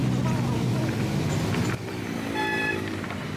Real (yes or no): yes